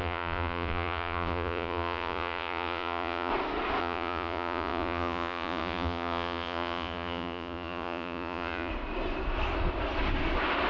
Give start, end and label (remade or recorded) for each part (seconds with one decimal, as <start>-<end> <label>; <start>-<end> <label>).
0.0-3.3 remade; 3.3-3.8 recorded; 3.8-8.7 remade; 8.7-10.7 recorded